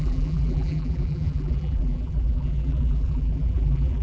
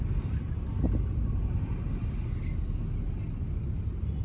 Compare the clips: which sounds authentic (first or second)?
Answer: second